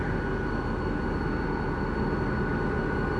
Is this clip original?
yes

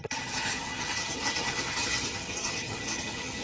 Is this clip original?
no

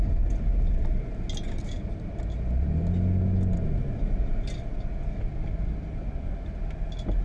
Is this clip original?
yes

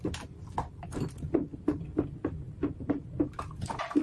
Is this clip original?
yes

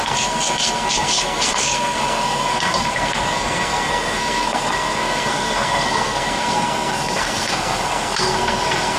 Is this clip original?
no